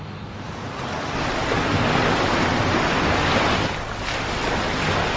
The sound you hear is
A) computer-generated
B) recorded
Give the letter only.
B